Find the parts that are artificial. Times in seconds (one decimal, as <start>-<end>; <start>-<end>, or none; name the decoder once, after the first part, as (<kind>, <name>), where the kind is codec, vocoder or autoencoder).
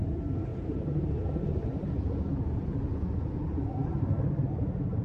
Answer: none